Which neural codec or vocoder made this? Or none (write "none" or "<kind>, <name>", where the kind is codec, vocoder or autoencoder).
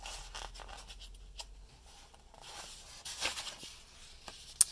none